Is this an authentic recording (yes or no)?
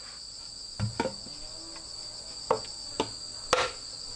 yes